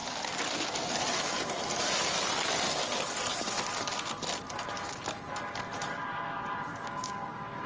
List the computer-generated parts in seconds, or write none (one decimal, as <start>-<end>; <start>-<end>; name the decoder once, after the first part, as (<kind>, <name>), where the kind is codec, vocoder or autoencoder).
6.7-7.7 (codec, DAC)